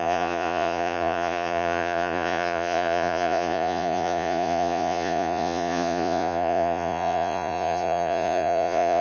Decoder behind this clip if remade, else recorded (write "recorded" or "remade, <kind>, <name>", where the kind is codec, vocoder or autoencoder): remade, vocoder, Vocos